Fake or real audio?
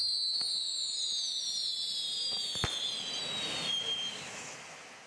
real